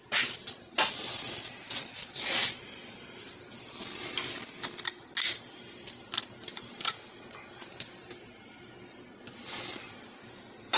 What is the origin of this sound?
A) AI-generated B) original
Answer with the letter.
B